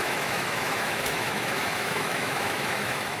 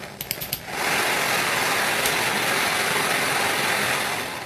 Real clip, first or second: second